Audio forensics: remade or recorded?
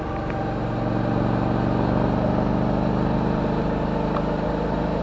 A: recorded